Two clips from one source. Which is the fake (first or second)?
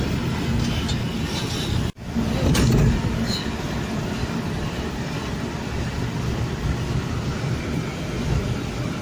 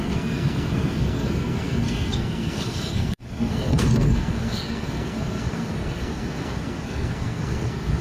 second